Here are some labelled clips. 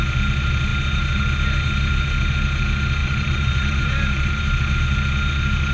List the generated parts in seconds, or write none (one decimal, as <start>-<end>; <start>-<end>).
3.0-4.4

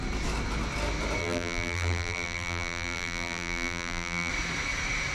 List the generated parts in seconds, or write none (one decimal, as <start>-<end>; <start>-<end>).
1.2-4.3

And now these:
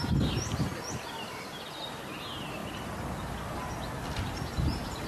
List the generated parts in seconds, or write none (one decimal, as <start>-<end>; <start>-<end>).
0.7-1.6

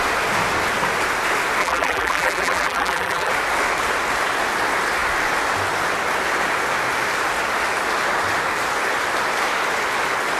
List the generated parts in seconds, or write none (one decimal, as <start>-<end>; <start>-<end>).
1.6-3.3

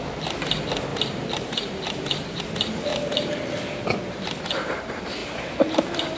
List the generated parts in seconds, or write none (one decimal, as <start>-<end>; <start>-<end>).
0.9-2.4; 2.9-3.4; 5.2-6.2